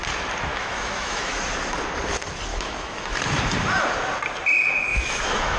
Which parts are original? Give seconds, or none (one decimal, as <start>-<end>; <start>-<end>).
0.0-0.5; 1.4-2.5; 3.2-4.9